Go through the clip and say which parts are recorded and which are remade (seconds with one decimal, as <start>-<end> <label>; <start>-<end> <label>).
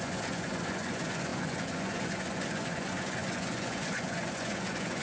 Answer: 0.0-5.0 remade